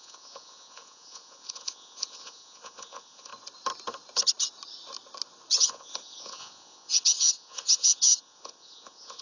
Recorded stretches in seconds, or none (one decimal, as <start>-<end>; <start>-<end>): 3.3-5.6